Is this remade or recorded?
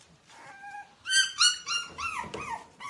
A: recorded